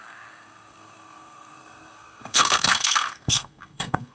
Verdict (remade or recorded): remade